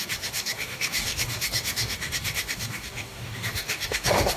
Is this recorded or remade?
remade